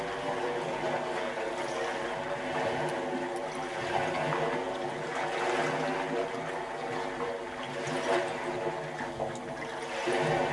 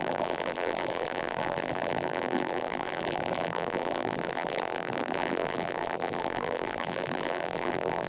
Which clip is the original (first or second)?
first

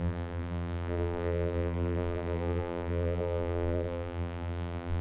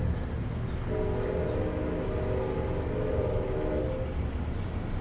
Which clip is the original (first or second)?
second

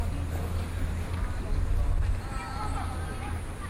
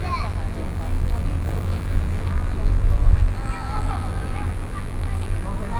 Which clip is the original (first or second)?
first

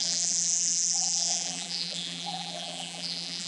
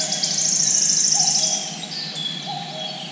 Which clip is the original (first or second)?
second